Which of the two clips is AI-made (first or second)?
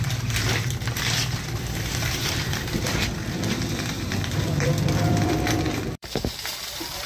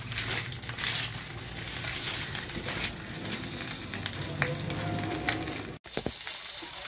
first